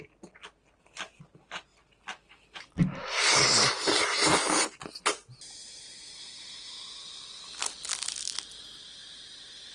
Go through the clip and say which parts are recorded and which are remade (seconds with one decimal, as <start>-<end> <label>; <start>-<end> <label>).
0.0-9.7 recorded